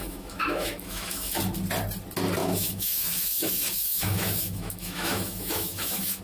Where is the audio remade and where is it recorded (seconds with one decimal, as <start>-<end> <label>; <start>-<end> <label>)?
0.0-1.4 remade; 1.4-2.4 recorded; 2.4-6.2 remade